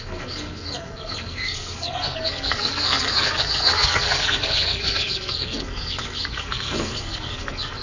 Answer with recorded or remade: remade